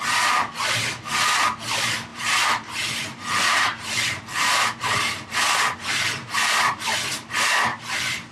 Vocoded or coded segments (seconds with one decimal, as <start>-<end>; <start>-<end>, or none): 2.1-6.8; 7.7-8.3